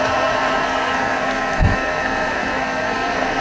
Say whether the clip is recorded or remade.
remade